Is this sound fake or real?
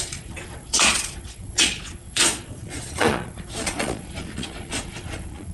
fake